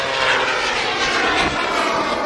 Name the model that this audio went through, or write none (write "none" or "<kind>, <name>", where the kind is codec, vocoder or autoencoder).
none